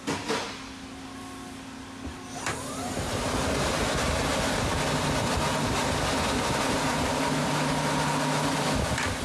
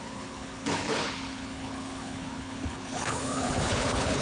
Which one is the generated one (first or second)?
second